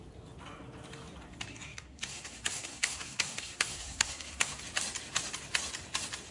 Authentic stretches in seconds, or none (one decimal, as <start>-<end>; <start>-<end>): 0.0-1.5; 4.6-6.3